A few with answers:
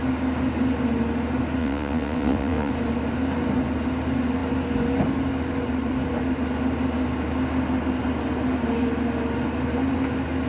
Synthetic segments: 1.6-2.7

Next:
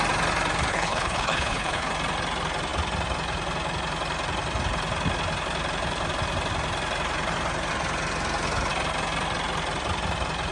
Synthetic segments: 0.7-1.9

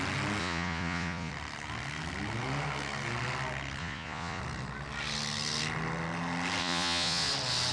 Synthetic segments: 0.4-1.3; 3.8-4.4; 6.6-7.3

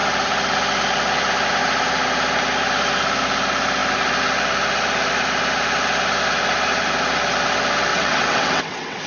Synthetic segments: 7.9-9.1

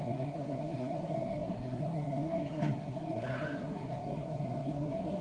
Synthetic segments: 0.0-5.2